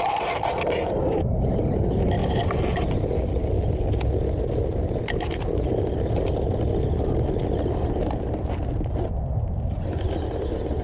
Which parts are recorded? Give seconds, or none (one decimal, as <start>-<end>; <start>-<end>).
0.0-10.8

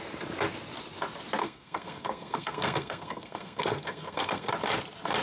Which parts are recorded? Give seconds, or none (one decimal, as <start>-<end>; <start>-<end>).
0.0-1.4; 4.5-5.2

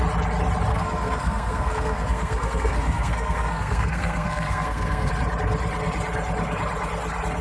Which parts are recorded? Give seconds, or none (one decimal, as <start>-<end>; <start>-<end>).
0.0-0.7; 5.1-7.4